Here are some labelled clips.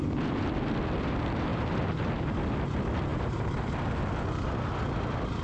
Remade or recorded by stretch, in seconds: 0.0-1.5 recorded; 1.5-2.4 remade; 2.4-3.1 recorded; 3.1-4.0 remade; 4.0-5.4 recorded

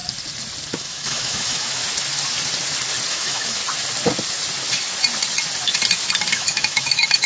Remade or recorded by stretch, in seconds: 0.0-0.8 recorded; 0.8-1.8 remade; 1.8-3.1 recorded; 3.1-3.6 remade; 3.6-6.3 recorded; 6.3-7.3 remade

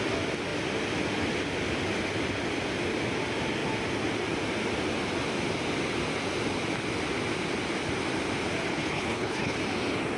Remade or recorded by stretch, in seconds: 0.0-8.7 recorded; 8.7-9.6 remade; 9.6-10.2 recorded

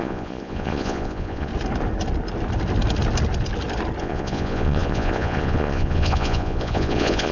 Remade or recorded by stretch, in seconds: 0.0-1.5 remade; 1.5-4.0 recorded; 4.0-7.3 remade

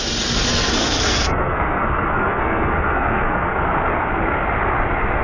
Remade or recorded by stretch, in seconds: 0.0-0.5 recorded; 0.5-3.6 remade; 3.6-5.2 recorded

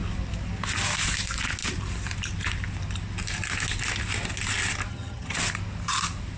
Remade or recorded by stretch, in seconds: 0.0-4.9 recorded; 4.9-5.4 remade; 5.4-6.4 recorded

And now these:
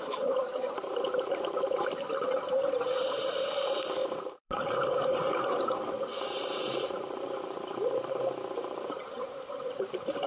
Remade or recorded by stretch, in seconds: 0.0-0.5 remade; 0.5-2.2 recorded; 2.2-10.3 remade